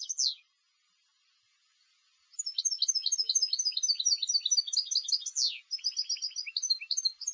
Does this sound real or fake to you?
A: real